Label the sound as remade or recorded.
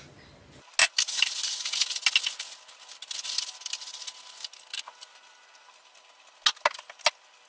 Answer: recorded